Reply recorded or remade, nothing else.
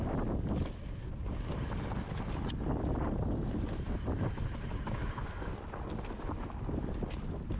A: recorded